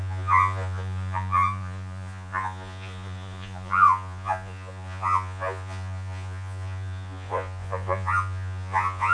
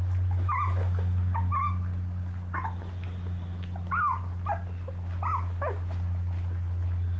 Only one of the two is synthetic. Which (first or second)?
first